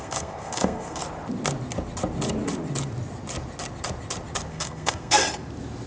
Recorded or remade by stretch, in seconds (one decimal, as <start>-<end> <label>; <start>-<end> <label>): 0.0-1.0 remade; 1.0-4.5 recorded; 4.5-5.2 remade; 5.2-5.9 recorded

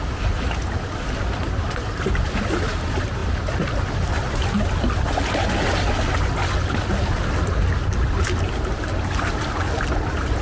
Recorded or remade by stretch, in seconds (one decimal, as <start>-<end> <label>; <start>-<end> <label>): 0.0-10.4 recorded

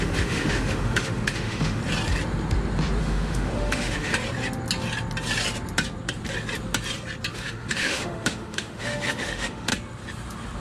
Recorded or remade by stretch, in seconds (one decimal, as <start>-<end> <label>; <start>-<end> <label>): 0.0-1.8 remade; 1.8-3.0 recorded; 3.0-4.1 remade; 4.1-7.3 recorded; 7.3-9.7 remade; 9.7-10.6 recorded

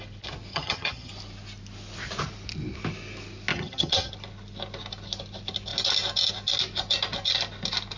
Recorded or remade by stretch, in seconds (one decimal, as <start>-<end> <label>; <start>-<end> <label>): 0.0-0.5 recorded; 0.5-1.1 remade; 1.1-3.5 recorded; 3.5-4.1 remade; 4.1-8.0 recorded

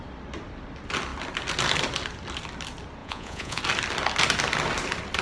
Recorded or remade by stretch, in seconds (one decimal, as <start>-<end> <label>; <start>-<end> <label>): 0.0-3.0 recorded; 3.0-3.6 remade; 3.6-5.2 recorded

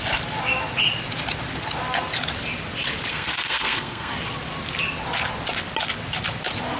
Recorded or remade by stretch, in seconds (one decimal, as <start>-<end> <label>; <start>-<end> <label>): 0.0-3.1 recorded; 3.1-4.1 remade; 4.1-6.8 recorded